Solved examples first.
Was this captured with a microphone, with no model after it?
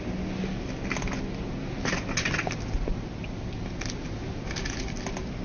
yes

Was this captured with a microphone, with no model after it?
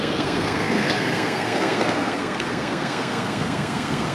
no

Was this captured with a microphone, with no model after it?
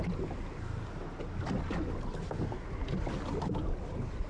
yes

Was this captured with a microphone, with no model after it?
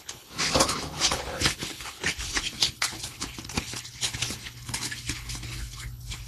no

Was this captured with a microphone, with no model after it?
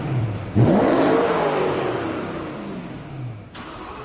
no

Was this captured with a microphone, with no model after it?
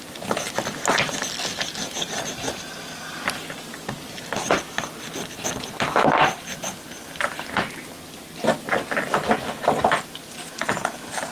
yes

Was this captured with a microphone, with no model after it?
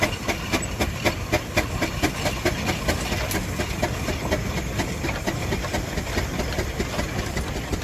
yes